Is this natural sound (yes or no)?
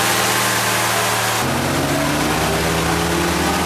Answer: yes